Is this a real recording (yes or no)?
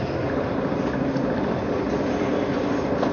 yes